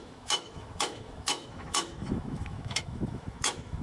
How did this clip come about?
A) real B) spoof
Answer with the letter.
B